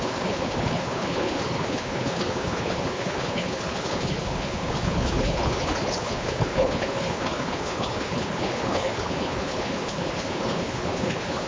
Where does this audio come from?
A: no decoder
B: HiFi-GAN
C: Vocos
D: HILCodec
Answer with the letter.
D